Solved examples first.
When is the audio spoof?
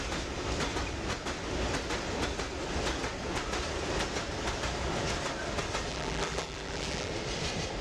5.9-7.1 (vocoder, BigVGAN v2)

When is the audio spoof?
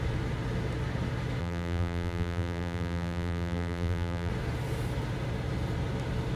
1.4-4.3 (vocoder, BigVGAN v2)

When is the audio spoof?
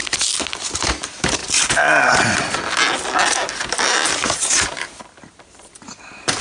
0.8-1.4 (vocoder, BigVGAN v2); 3.9-6.4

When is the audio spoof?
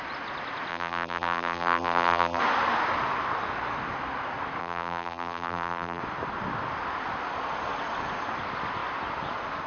0.7-2.4 (vocoder, BigVGAN v2); 4.6-6.0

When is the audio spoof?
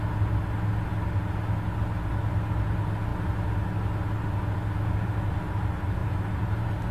6.0-6.9 (vocoder, BigVGAN v2)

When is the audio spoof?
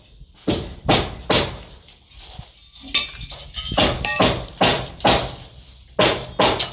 4.7-5.5 (vocoder, BigVGAN v2)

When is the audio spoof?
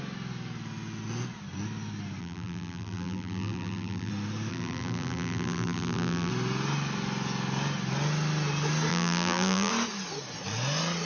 2.2-4.1 (vocoder, BigVGAN v2); 4.5-6.3; 8.9-9.7